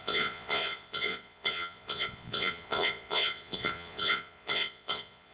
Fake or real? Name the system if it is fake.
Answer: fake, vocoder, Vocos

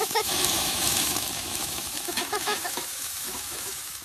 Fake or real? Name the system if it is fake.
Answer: fake, autoencoder, DAC-VAE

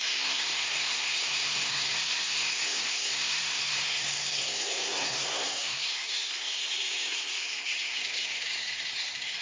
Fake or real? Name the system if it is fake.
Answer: fake, codec, SNAC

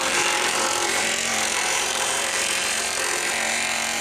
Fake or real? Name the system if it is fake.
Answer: fake, vocoder, BigVGAN v2